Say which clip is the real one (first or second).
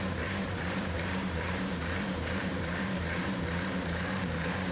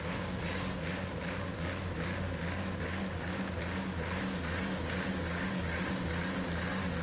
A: second